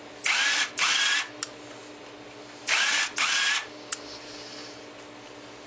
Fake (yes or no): no